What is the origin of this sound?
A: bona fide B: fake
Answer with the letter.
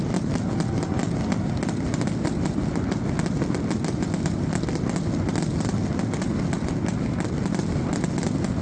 A